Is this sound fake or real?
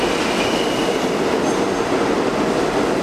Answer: real